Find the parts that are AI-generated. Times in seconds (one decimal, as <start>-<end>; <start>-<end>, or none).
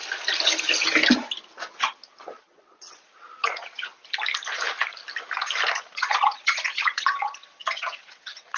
2.2-3.9; 5.8-8.6